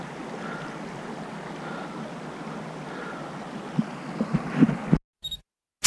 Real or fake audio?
real